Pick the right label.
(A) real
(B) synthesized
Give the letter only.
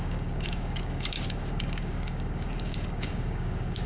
B